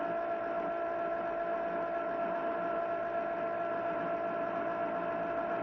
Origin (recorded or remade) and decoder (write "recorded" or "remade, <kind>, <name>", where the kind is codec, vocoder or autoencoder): recorded